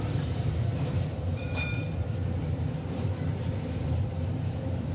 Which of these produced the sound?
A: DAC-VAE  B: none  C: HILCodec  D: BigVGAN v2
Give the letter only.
D